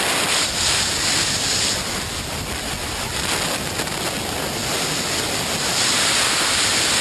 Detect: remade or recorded recorded